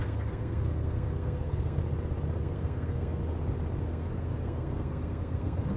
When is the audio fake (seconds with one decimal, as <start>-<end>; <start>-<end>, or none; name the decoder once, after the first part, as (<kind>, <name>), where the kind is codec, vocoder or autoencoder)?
0.0-1.8 (codec, SNAC); 2.4-3.2; 3.8-5.8